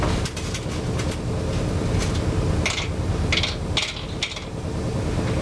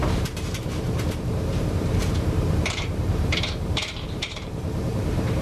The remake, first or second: second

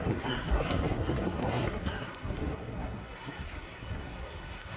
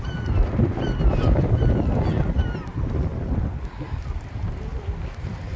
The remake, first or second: first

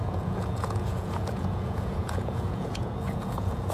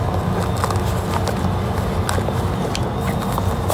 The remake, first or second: first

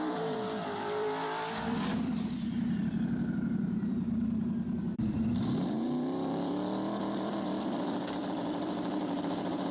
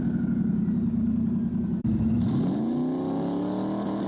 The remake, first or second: first